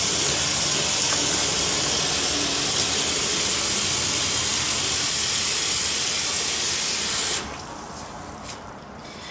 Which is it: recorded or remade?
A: recorded